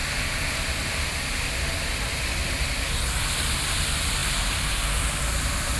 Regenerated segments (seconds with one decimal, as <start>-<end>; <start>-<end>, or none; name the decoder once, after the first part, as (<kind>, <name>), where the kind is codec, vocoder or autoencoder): none